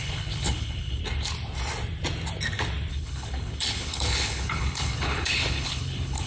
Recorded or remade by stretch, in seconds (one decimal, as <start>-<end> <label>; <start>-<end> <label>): 0.0-1.0 remade; 1.0-2.9 recorded; 2.9-6.3 remade